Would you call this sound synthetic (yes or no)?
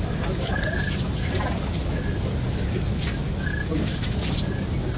no